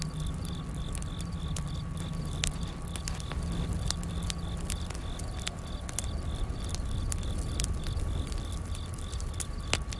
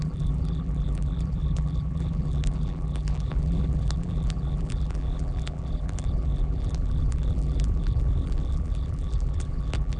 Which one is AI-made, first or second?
second